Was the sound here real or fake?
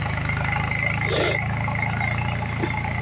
real